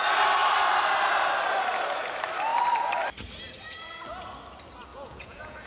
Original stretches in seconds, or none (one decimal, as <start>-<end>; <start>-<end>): 0.0-4.9